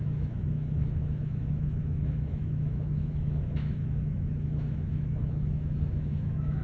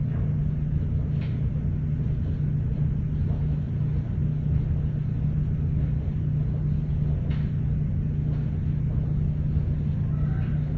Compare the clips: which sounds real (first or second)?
second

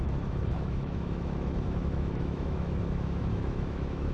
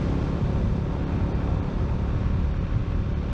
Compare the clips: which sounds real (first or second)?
second